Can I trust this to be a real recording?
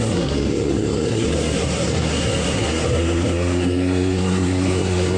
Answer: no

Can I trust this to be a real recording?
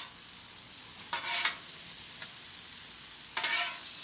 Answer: yes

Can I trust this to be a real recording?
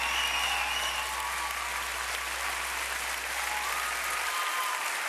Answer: yes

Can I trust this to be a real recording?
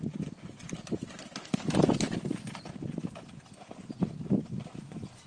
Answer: yes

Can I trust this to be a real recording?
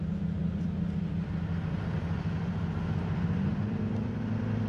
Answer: no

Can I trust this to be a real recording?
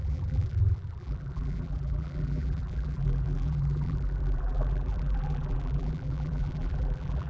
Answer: no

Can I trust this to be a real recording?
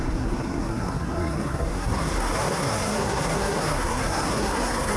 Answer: no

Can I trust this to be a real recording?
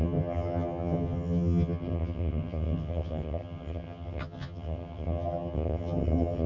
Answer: no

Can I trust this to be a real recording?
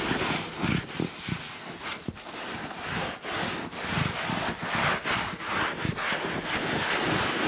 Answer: yes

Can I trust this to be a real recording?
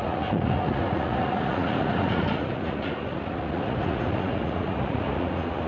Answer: no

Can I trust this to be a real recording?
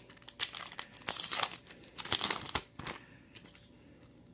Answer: yes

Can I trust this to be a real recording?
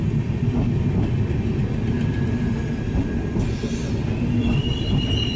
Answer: yes